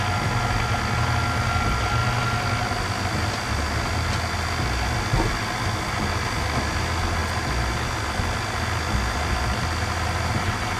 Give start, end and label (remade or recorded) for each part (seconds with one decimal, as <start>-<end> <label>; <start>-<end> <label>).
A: 0.0-10.8 recorded